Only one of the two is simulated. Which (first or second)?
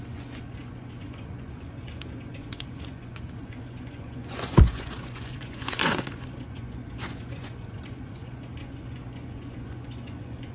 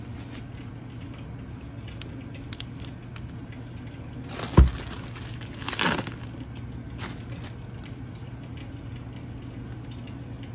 first